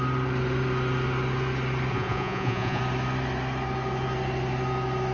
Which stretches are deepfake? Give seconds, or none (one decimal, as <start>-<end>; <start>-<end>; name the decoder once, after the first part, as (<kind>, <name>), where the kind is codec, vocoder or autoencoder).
1.9-2.8 (vocoder, Vocos)